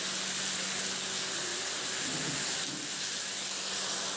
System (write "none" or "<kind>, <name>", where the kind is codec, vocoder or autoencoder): none